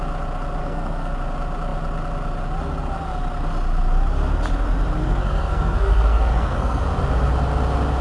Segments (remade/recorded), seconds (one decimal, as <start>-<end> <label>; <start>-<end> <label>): 0.0-0.6 recorded; 0.6-1.1 remade; 1.1-5.0 recorded; 5.0-6.8 remade; 6.8-8.0 recorded